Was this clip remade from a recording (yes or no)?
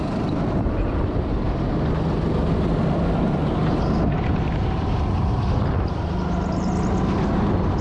no